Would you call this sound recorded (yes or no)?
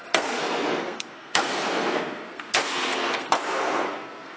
no